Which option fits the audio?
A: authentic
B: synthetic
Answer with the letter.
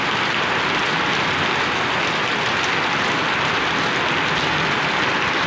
A